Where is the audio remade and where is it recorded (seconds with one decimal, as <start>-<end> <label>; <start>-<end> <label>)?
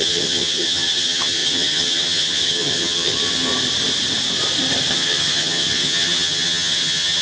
0.0-3.5 remade; 3.5-4.9 recorded; 4.9-7.2 remade